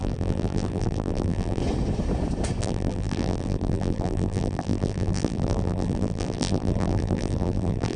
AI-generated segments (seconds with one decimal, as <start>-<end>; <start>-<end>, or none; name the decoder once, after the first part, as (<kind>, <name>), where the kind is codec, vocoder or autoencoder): 0.0-1.6 (vocoder, BigVGAN v2); 2.6-8.0